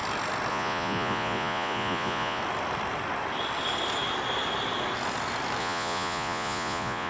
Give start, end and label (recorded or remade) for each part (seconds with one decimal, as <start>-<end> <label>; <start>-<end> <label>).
0.0-0.5 recorded; 0.5-2.4 remade; 2.4-5.6 recorded; 5.6-7.1 remade

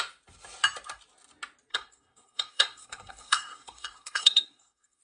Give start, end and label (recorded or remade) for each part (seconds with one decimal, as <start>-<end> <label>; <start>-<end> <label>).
0.0-1.7 recorded; 1.7-5.0 remade

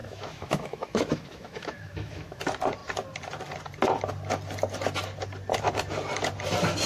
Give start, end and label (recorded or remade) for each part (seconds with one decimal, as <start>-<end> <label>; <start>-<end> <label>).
0.0-2.4 remade; 2.4-6.9 recorded

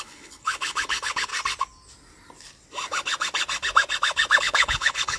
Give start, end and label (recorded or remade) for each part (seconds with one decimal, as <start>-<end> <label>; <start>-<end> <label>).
0.0-1.3 remade; 1.3-4.4 recorded; 4.4-5.2 remade

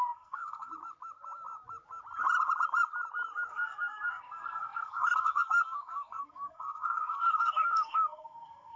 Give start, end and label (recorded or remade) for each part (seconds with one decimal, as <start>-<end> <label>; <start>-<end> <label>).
0.0-0.7 remade; 0.7-3.5 recorded; 3.5-8.8 remade

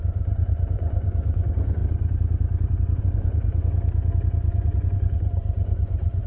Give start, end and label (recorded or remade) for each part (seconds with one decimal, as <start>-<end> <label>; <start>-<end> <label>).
0.0-1.8 remade; 1.8-3.0 recorded; 3.0-3.5 remade; 3.5-4.5 recorded; 4.5-6.3 remade